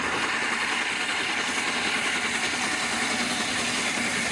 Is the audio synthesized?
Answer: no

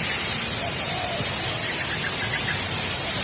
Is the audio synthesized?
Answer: no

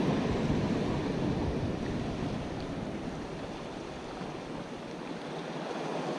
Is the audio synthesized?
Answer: no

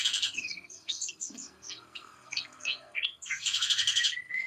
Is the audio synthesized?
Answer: yes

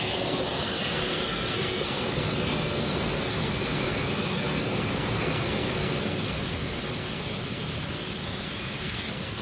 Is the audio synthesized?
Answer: yes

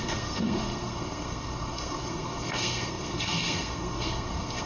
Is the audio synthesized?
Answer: yes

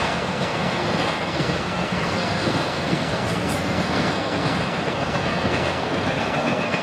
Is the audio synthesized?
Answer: yes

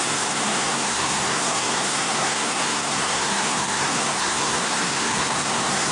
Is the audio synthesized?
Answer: yes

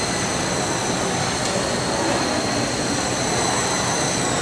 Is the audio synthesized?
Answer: no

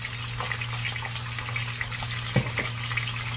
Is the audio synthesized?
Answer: no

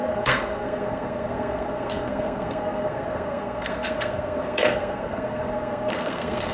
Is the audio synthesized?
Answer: yes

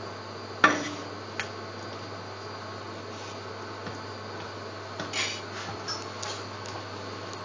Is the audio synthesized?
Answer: no